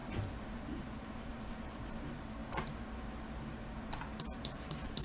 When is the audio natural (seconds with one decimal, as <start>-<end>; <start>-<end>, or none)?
2.4-3.8